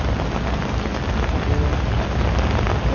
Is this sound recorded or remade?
recorded